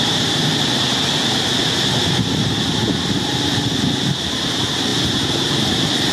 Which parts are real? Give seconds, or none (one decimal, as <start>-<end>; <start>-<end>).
0.5-4.2